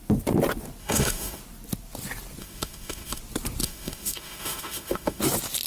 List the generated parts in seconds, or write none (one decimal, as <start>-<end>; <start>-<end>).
0.8-1.4; 2.4-3.2; 3.6-5.2